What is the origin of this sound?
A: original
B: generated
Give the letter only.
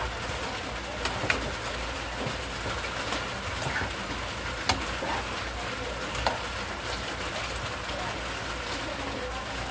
A